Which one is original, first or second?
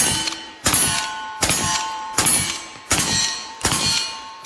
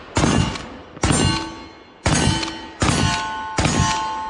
second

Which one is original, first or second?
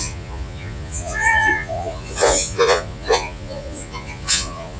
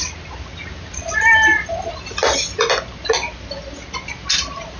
second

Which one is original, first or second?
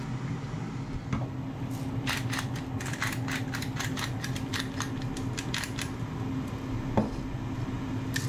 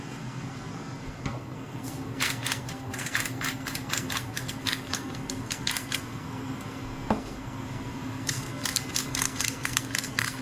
first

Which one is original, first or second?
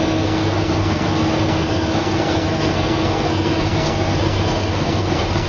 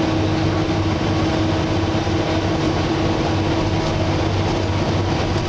second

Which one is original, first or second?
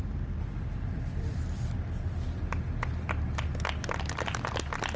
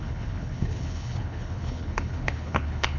first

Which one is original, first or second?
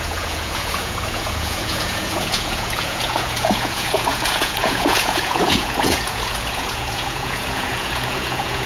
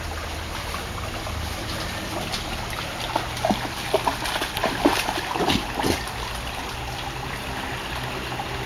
second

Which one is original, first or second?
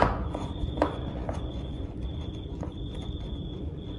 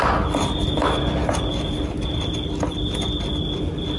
second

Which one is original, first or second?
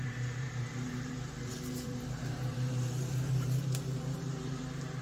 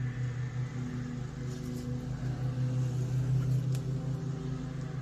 second